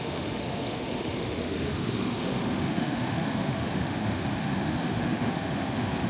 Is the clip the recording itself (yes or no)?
no